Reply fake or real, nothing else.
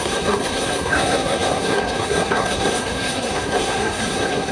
fake